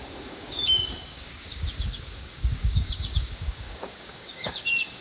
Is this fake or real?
fake